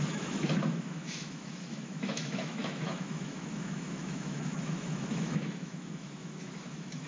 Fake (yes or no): yes